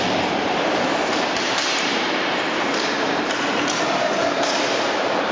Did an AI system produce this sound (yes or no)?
yes